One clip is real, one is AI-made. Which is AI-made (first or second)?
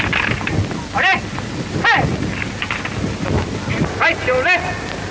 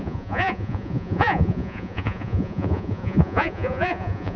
second